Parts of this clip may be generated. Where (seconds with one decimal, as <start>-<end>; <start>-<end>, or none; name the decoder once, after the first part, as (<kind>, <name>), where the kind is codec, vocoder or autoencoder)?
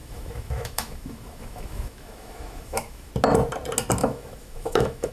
0.0-3.1 (autoencoder, DAC-VAE); 4.0-5.1